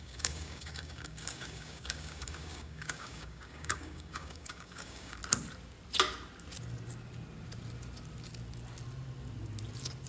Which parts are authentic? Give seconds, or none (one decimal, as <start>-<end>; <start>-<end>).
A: 5.2-10.1